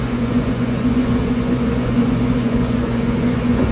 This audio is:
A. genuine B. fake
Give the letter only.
B